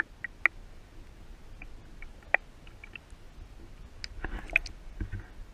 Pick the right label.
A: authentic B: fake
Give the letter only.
A